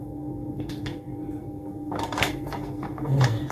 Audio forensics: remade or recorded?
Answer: remade